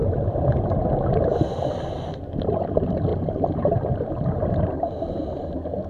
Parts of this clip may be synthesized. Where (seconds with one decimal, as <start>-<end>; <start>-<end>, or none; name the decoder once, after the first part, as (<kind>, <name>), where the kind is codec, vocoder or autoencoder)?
none